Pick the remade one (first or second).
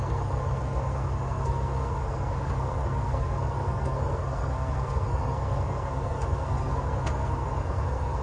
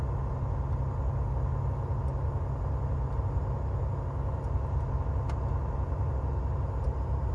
first